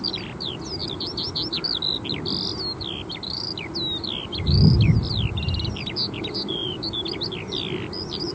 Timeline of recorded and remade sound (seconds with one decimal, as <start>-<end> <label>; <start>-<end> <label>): 0.0-8.3 recorded